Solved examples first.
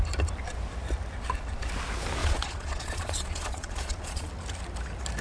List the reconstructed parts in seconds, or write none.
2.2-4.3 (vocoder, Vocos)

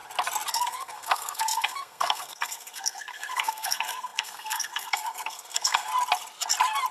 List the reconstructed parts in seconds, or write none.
0.5-5.9 (codec, SNAC)

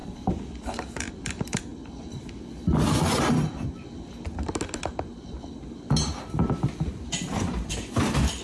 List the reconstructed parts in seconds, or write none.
0.0-1.7 (vocoder, BigVGAN v2); 6.2-8.4

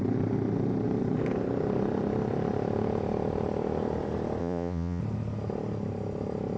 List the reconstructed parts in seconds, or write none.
4.4-5.0 (vocoder, Vocos)